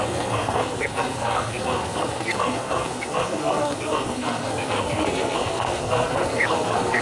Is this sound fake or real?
fake